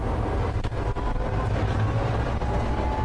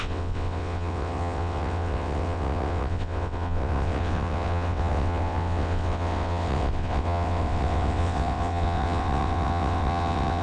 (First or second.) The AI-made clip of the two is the second